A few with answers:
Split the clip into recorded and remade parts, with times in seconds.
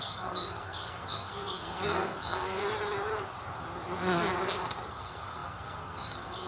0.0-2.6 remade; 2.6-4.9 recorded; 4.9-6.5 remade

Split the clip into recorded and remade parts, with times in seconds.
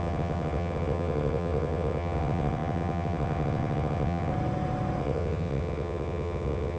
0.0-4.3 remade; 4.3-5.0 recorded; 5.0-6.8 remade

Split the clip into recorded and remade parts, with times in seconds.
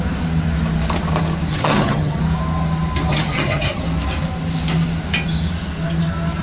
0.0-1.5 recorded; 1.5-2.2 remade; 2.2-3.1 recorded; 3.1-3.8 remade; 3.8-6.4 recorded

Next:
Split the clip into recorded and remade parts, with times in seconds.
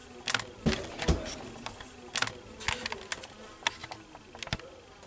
0.0-5.1 recorded